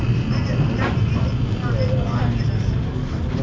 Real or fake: real